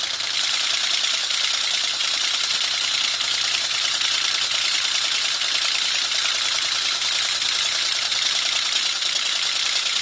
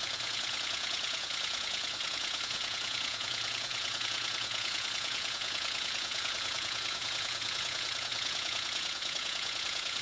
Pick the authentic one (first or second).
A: first